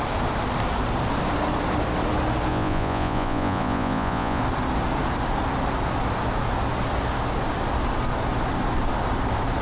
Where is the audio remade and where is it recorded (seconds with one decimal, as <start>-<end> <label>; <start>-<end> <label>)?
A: 0.0-2.5 recorded; 2.5-4.4 remade; 4.4-9.6 recorded